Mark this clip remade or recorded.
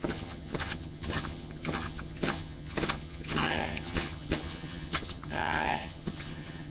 remade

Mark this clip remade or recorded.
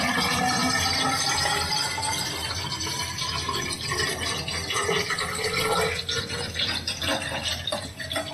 recorded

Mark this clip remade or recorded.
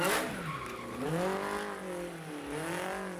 recorded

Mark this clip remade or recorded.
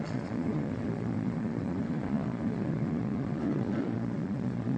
remade